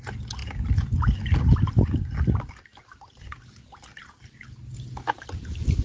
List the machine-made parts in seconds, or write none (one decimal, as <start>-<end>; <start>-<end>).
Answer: none